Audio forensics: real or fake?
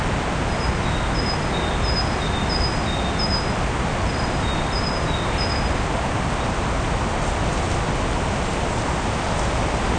real